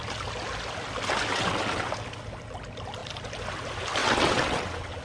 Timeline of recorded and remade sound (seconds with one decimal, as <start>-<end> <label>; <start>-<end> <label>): 0.0-1.3 recorded; 1.3-1.9 remade; 1.9-4.0 recorded; 4.0-5.0 remade